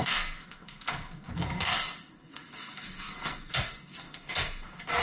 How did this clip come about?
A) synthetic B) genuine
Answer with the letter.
A